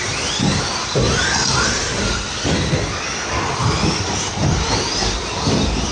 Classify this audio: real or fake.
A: real